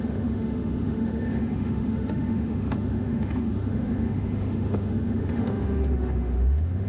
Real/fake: fake